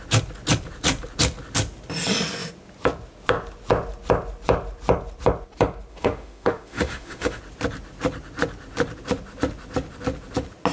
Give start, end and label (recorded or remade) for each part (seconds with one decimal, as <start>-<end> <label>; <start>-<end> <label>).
0.0-5.9 recorded; 5.9-7.4 remade; 7.4-10.7 recorded